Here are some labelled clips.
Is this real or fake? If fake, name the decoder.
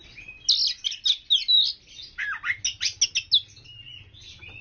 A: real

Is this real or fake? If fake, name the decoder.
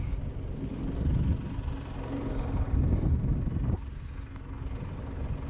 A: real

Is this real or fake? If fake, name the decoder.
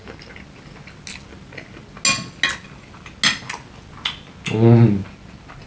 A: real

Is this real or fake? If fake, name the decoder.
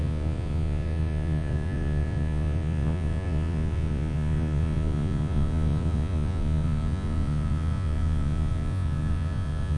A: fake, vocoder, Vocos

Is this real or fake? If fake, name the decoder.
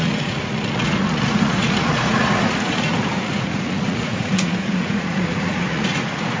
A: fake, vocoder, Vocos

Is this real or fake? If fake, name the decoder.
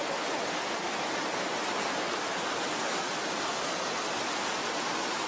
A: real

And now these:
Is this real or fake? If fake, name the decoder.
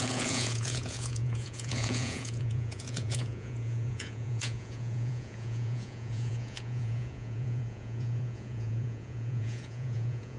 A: fake, vocoder, Vocos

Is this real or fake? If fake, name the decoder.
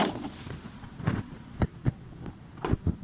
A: fake, vocoder, Vocos